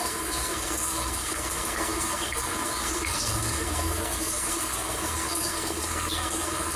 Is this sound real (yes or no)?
no